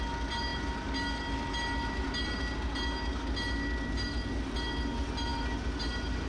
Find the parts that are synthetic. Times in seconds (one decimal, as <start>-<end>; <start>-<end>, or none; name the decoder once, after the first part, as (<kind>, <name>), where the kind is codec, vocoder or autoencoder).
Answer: none